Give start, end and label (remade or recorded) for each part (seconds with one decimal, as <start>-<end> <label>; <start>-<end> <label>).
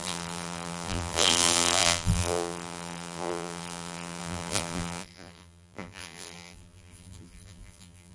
0.0-8.1 remade